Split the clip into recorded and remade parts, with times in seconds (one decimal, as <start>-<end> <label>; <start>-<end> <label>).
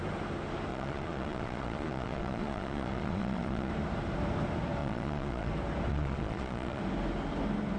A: 0.0-0.7 recorded; 0.7-3.7 remade; 3.7-4.8 recorded; 4.8-5.5 remade; 5.5-5.9 recorded; 5.9-6.8 remade; 6.8-7.8 recorded